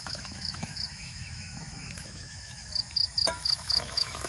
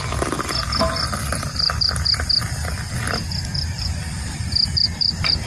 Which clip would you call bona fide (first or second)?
second